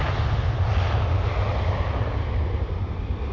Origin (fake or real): real